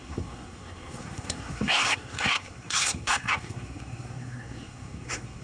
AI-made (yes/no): yes